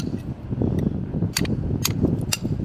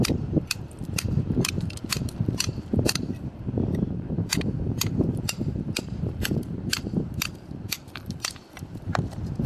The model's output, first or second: second